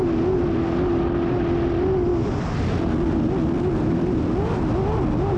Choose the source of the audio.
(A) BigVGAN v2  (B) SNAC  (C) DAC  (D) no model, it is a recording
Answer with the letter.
D